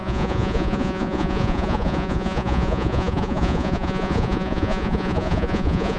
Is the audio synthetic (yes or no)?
yes